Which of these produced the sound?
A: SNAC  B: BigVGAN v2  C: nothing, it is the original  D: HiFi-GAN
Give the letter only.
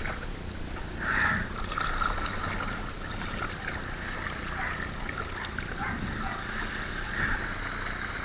C